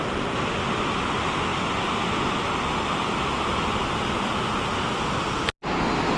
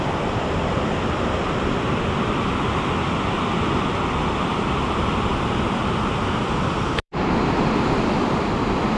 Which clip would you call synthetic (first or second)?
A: second